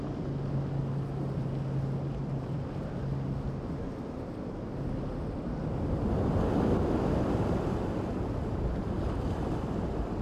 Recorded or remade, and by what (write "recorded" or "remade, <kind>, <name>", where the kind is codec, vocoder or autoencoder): recorded